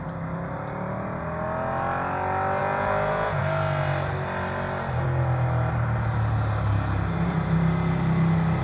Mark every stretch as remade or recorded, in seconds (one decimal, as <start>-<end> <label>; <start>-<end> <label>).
0.0-2.6 recorded; 2.6-3.4 remade; 3.4-8.6 recorded

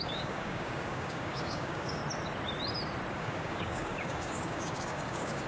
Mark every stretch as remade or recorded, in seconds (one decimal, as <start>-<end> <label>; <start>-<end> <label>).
0.0-2.0 remade; 2.0-3.1 recorded; 3.1-5.5 remade

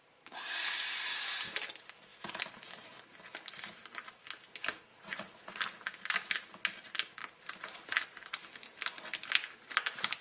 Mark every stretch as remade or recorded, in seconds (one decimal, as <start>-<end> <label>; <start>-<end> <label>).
0.0-4.9 recorded; 4.9-5.6 remade; 5.6-10.2 recorded

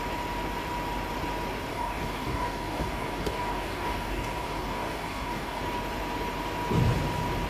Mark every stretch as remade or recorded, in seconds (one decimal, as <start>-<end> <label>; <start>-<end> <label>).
0.0-1.7 recorded; 1.7-5.6 remade; 5.6-7.5 recorded

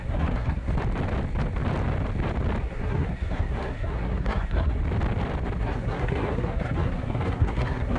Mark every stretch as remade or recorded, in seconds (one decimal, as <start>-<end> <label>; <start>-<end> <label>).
0.0-0.7 remade; 0.7-2.6 recorded; 2.6-4.8 remade; 4.8-5.6 recorded; 5.6-8.0 remade

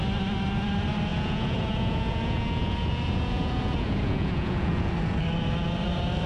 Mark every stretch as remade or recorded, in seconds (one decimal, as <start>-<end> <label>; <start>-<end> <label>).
0.0-1.1 recorded; 1.1-4.9 remade; 4.9-6.3 recorded

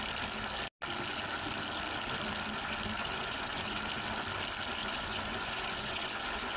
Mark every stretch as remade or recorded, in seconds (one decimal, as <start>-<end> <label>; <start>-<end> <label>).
0.0-3.0 recorded; 3.0-3.8 remade; 3.8-4.8 recorded; 4.8-6.6 remade

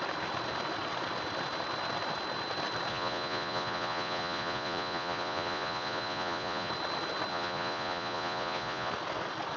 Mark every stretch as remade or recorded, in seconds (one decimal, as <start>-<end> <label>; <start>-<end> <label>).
0.0-2.9 recorded; 2.9-6.7 remade; 6.7-7.3 recorded; 7.3-8.9 remade; 8.9-9.6 recorded